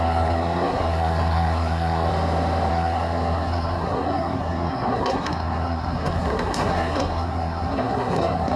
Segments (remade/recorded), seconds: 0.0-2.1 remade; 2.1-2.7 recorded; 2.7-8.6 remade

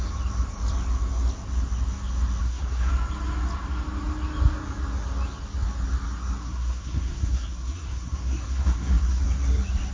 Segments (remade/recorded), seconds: 0.0-2.4 recorded; 2.4-2.9 remade; 2.9-6.4 recorded; 6.4-9.2 remade; 9.2-9.9 recorded

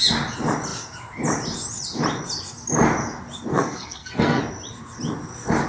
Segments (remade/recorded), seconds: 0.0-3.5 recorded; 3.5-4.4 remade; 4.4-5.7 recorded

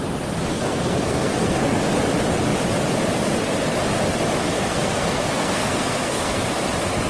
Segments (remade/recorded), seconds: 0.0-0.5 recorded; 0.5-1.8 remade; 1.8-4.4 recorded; 4.4-6.4 remade; 6.4-7.1 recorded

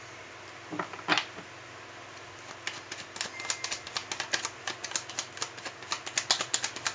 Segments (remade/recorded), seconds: 0.0-6.9 recorded

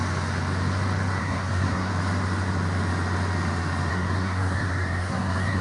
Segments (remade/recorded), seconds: 0.0-1.2 recorded; 1.2-1.9 remade; 1.9-3.9 recorded; 3.9-5.6 remade

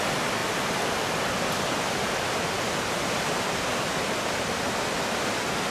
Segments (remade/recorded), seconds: 0.0-5.7 recorded